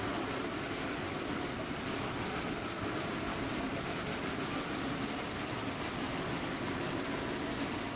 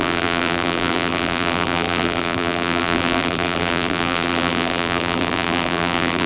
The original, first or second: first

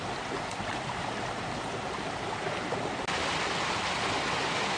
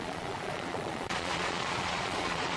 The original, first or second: first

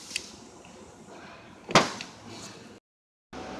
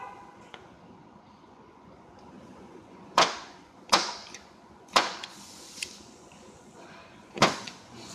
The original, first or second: first